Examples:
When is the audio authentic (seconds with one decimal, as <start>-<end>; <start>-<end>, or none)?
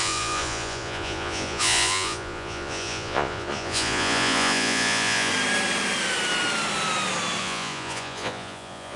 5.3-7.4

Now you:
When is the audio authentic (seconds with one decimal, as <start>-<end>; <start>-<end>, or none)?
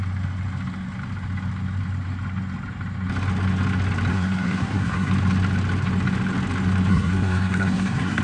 0.0-4.1; 5.1-6.9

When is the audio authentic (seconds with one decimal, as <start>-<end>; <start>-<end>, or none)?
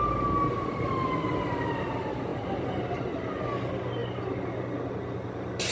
0.0-5.7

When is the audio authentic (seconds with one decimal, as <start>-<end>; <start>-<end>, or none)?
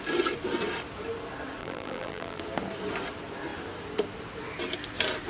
0.0-1.6; 2.4-5.3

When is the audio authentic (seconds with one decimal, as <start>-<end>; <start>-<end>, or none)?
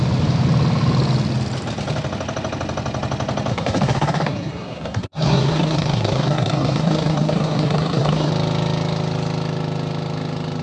0.0-3.5; 8.3-10.6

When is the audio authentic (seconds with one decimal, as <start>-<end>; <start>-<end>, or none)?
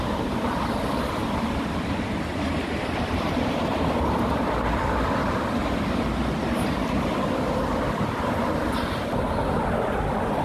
5.6-9.9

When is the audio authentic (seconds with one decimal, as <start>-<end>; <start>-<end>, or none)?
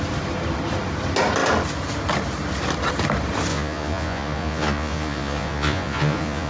0.0-3.5